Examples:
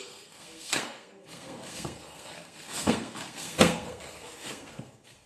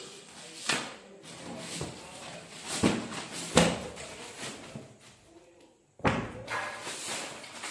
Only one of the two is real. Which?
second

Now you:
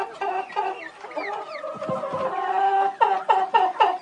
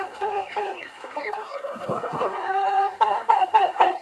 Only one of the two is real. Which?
first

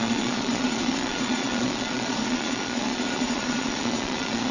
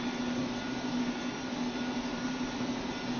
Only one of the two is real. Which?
second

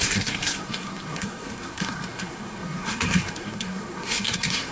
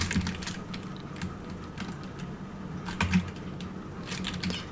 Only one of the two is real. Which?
second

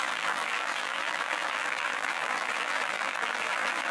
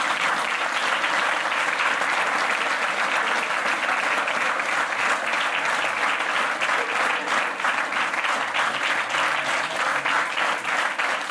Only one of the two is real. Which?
second